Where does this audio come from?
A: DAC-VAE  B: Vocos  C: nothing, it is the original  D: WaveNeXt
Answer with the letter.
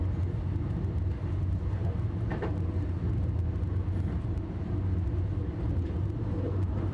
C